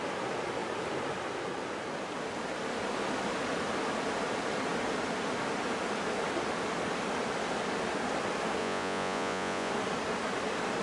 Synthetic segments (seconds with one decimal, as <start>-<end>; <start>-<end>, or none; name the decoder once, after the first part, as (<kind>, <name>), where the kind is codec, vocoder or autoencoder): 8.6-9.7 (vocoder, Vocos)